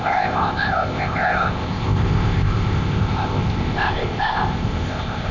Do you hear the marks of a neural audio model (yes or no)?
yes